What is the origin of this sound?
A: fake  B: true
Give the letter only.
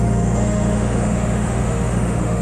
A